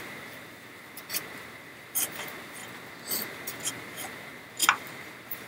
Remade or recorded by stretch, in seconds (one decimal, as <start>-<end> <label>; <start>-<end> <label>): 0.0-2.6 remade; 2.6-3.7 recorded; 3.7-4.3 remade; 4.3-5.0 recorded; 5.0-5.5 remade